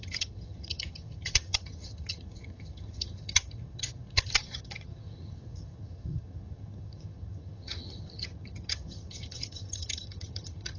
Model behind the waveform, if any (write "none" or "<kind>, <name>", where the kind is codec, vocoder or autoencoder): vocoder, HiFi-GAN